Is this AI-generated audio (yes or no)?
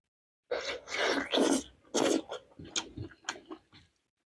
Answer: no